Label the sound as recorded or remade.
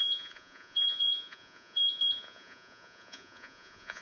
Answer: remade